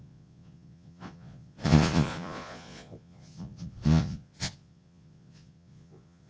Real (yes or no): no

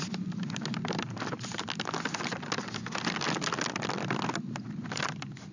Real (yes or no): yes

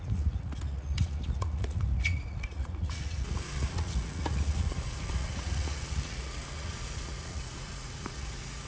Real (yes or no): no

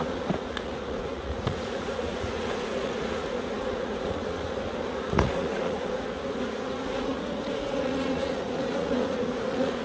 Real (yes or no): no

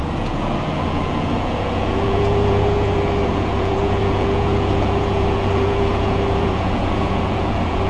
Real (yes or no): no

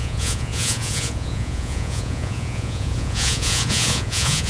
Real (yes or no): no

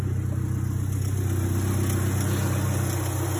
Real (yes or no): yes